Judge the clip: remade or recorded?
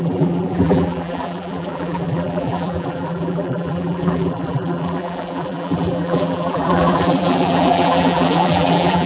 remade